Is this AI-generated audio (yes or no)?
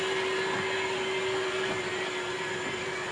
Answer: no